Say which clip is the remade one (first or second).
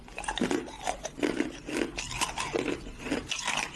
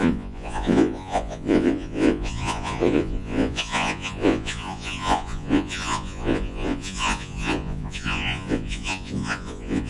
second